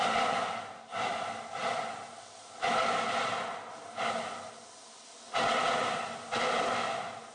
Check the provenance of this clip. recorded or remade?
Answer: recorded